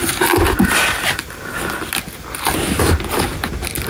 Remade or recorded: recorded